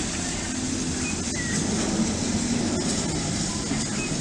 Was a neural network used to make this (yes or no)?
no